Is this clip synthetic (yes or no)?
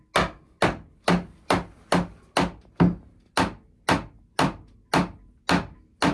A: no